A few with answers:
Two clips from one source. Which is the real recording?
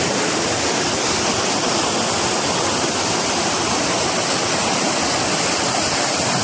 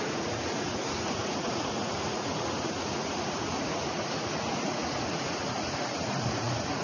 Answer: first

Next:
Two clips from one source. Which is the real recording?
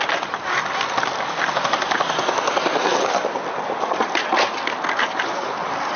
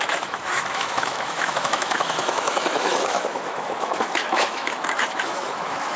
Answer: first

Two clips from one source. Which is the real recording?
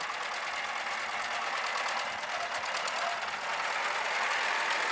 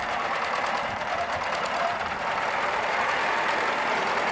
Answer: first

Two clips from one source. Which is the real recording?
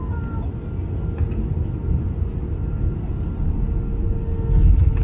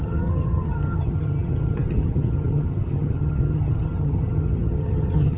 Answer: first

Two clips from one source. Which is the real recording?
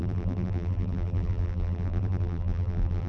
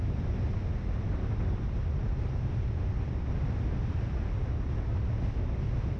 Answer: second